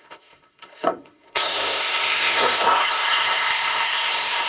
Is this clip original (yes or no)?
no